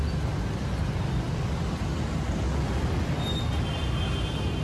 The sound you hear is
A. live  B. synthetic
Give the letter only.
A